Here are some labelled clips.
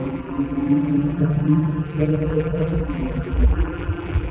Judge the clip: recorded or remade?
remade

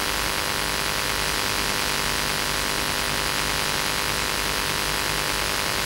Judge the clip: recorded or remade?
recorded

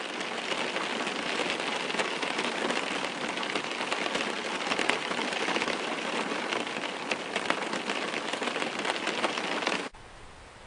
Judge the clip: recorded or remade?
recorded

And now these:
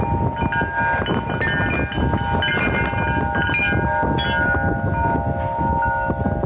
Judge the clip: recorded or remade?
recorded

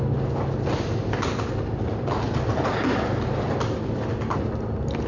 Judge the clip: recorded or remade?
recorded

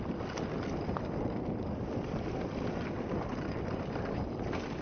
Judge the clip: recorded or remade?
remade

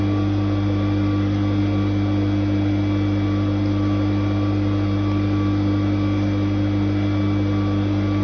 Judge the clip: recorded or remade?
recorded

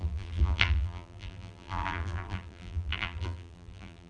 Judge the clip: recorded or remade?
remade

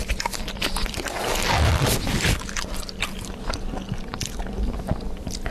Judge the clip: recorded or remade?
recorded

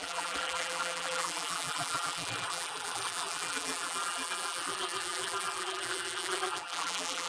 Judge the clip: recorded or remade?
remade